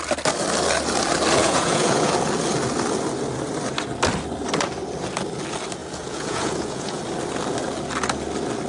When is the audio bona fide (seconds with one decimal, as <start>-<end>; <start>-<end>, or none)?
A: 0.0-1.4; 2.1-5.8; 7.0-8.7